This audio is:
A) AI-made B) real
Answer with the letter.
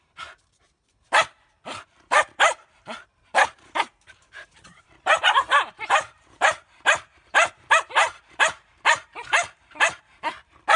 A